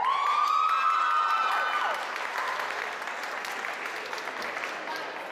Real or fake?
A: real